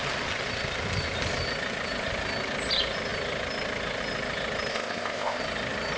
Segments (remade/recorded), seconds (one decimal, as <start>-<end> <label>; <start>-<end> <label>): 0.0-4.7 recorded; 4.7-5.4 remade; 5.4-6.0 recorded